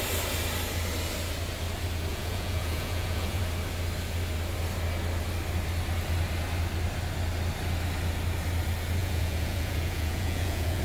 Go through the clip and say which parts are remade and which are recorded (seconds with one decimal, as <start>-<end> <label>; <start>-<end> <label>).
0.0-2.1 recorded; 2.1-3.4 remade; 3.4-9.0 recorded; 9.0-10.8 remade

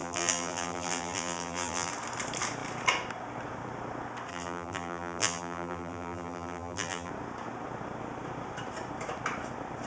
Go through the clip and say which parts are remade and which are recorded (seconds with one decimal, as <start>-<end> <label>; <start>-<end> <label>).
0.0-1.9 remade; 1.9-4.3 recorded; 4.3-7.1 remade; 7.1-9.9 recorded